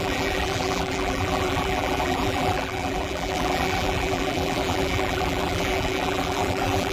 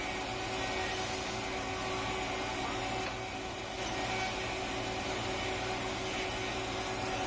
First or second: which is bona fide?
second